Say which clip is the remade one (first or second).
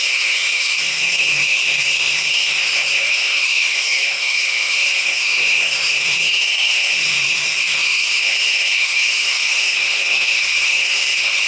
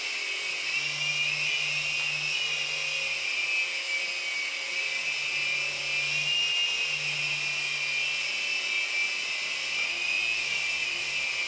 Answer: first